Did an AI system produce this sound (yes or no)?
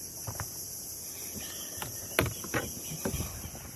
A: no